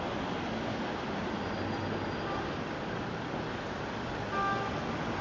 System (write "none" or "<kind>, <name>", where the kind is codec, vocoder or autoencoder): none